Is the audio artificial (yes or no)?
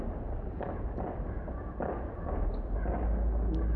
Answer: no